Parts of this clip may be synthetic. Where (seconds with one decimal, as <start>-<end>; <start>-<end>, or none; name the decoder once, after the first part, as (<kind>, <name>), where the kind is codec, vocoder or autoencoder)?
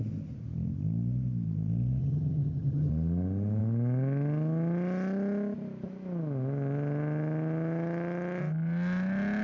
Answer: 2.0-2.9 (vocoder, HiFi-GAN)